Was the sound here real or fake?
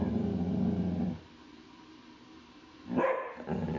real